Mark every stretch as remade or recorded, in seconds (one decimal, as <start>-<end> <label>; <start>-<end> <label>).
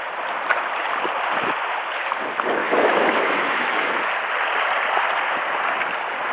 0.0-2.6 recorded; 2.6-4.0 remade; 4.0-6.3 recorded